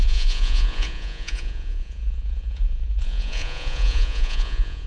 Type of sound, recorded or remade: remade